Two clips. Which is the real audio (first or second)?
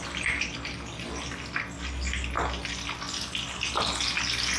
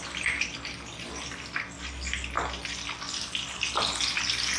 first